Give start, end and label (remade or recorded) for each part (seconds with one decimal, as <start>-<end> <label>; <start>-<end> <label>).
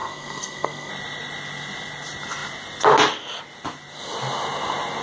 0.0-0.9 remade; 0.9-5.0 recorded